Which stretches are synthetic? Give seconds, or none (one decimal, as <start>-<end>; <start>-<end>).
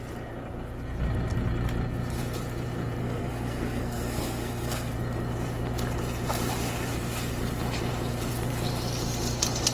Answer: 3.0-4.9